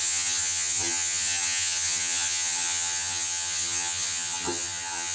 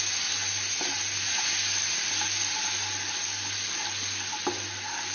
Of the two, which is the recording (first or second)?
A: second